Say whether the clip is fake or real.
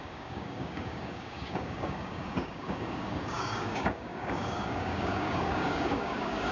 fake